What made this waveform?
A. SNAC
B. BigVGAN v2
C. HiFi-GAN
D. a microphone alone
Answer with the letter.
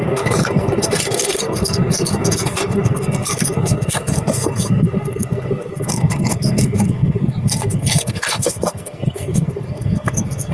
A